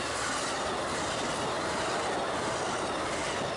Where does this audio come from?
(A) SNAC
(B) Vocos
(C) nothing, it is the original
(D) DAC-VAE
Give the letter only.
C